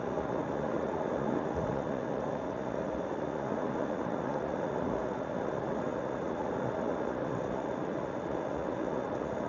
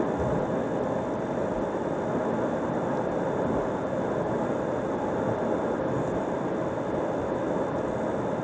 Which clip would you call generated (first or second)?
first